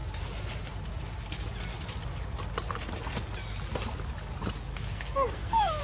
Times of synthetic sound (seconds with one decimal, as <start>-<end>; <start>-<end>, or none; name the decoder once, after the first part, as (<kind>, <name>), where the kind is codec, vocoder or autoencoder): 4.7-5.8 (codec, SNAC)